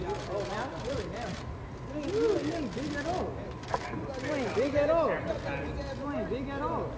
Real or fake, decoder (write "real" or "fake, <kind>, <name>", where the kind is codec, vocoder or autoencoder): real